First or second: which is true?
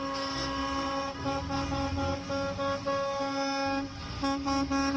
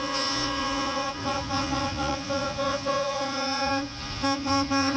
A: first